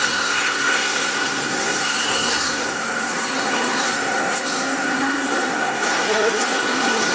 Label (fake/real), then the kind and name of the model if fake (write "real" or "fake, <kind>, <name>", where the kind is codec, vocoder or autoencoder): fake, codec, SNAC